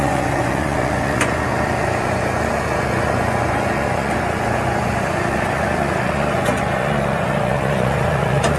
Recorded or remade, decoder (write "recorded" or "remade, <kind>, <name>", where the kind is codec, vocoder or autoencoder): remade, vocoder, Vocos